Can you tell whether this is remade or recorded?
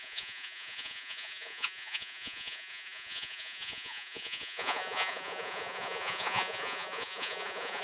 remade